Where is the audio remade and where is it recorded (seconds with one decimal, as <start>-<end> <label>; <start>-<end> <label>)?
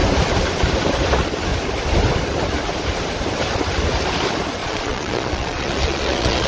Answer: 0.0-4.6 recorded; 4.6-6.5 remade